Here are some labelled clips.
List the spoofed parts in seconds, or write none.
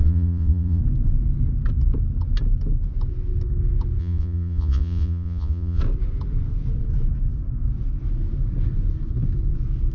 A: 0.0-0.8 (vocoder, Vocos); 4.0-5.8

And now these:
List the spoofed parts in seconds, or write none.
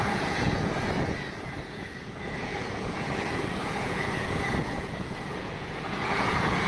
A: 0.0-6.7 (vocoder, Vocos)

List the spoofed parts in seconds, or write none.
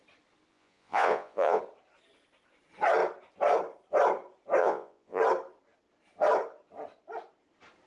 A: 0.5-1.6 (vocoder, Vocos); 4.6-5.2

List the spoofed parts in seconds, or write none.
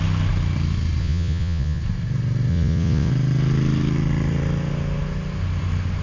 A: 1.0-1.8 (vocoder, Vocos); 2.5-3.1